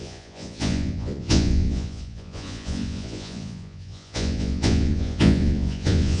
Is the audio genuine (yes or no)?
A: no